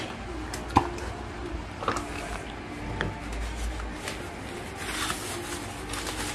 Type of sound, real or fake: real